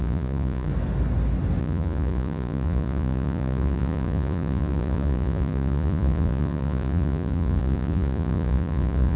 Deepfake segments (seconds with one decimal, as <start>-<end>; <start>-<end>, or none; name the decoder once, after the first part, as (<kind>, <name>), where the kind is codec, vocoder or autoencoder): 0.0-0.7 (vocoder, Vocos); 1.6-9.2